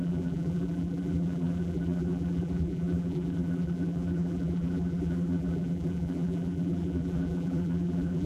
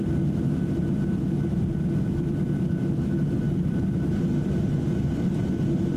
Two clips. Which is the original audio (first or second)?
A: second